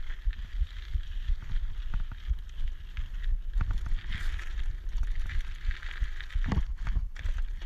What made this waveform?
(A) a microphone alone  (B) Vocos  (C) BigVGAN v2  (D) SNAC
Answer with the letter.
A